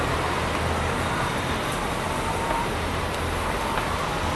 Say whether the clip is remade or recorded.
recorded